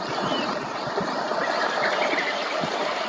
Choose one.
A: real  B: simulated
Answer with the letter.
A